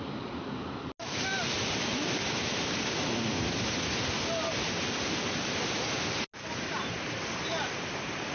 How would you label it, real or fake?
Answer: real